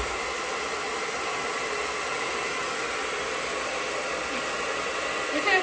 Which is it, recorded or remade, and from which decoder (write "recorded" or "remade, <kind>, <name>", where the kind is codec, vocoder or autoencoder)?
recorded